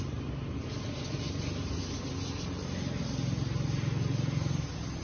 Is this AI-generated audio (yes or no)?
no